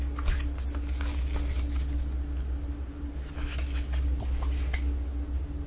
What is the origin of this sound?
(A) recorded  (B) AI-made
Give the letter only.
A